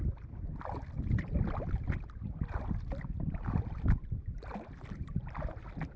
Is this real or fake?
real